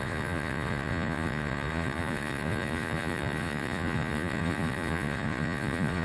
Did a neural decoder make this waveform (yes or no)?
yes